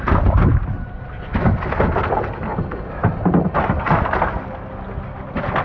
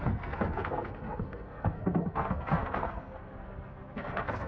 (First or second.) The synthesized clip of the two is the second